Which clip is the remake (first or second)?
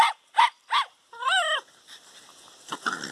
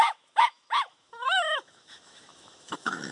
second